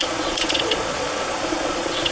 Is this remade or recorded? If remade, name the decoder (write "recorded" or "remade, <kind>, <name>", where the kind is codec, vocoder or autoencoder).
remade, vocoder, Vocos